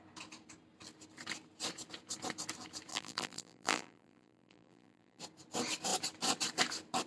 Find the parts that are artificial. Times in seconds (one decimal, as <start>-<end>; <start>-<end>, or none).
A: 2.9-5.2